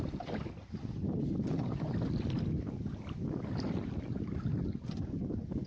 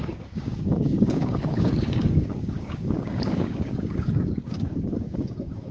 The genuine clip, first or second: first